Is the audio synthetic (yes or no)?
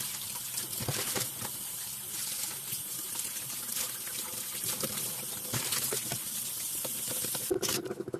yes